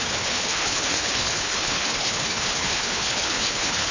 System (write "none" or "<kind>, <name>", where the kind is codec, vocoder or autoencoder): codec, HILCodec